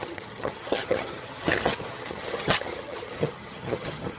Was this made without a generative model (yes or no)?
no